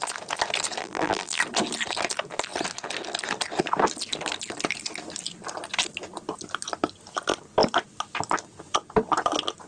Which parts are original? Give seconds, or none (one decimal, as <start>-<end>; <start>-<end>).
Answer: 0.0-0.8; 1.4-9.7